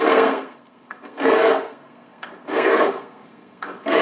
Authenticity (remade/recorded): remade